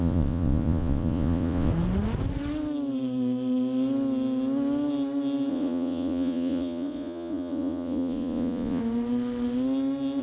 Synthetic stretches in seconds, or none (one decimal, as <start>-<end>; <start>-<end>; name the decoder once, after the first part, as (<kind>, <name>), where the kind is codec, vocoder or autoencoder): 0.0-1.7 (vocoder, Vocos); 5.5-8.8